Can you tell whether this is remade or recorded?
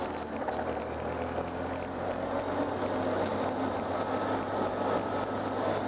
recorded